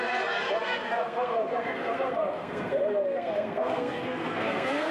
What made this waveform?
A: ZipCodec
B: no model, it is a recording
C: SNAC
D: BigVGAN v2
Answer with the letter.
C